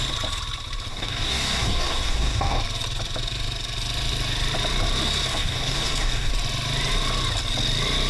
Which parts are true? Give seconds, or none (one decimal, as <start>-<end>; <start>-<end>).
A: 0.0-0.9; 2.6-5.3; 6.3-8.1